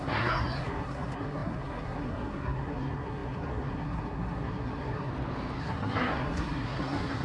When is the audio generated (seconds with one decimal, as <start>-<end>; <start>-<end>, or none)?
0.0-5.1; 5.6-7.2